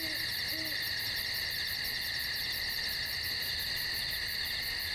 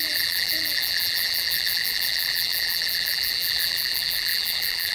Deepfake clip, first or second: second